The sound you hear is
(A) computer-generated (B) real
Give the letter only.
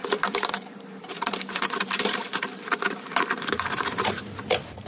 A